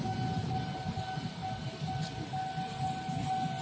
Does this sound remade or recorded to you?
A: recorded